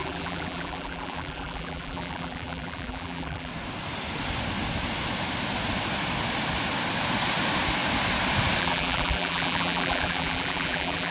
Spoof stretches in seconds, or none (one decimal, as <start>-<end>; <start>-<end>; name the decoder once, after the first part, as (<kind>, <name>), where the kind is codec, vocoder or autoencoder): 0.0-3.5 (vocoder, BigVGAN v2); 8.6-11.1